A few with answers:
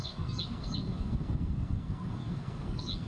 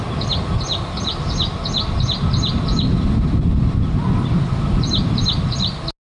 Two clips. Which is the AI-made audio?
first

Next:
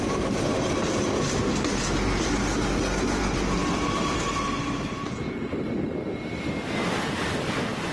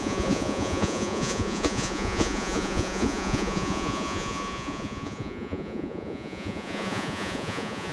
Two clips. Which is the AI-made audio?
second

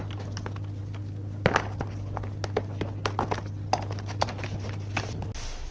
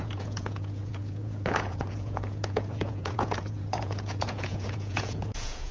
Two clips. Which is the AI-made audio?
second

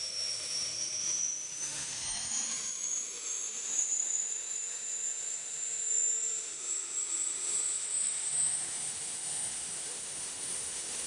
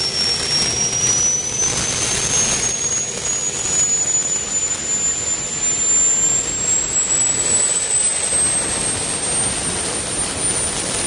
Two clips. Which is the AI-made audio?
first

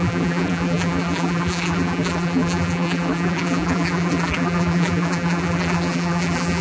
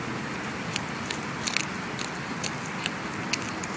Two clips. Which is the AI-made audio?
first